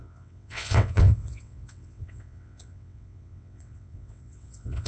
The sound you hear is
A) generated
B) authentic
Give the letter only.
A